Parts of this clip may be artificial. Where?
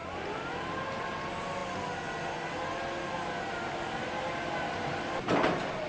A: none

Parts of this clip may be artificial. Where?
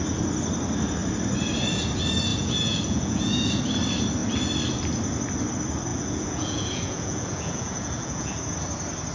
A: 2.3-3.6 (vocoder, Vocos); 5.9-8.4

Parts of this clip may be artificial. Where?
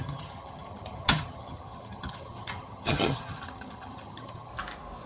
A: 0.0-4.5 (vocoder, HiFi-GAN)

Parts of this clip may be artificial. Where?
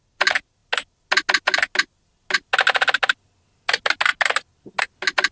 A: none